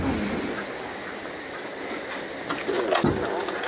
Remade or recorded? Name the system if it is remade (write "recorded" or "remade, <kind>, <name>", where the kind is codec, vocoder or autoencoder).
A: recorded